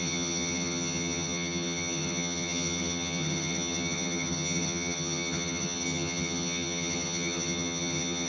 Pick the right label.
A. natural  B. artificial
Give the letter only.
B